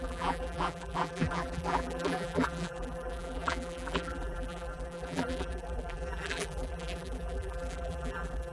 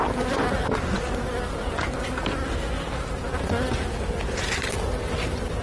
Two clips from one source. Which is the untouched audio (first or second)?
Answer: second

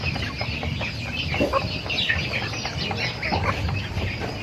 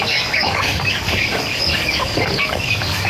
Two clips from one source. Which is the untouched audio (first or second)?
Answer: first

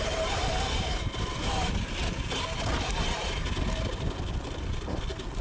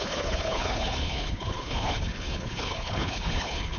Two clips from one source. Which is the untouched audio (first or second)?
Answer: first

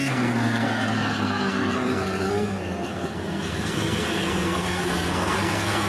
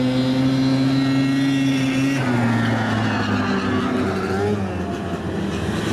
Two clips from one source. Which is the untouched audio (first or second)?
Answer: second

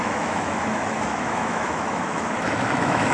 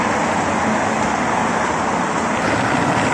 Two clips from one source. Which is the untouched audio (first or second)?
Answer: second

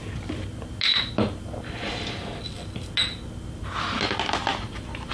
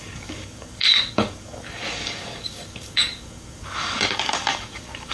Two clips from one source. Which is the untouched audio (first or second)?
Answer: first